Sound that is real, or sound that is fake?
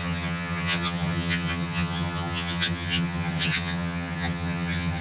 fake